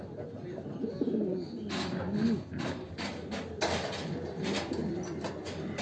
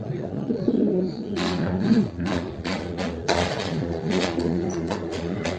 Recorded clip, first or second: first